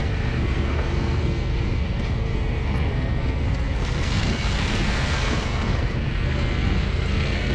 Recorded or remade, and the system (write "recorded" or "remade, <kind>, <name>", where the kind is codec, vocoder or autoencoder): remade, codec, SNAC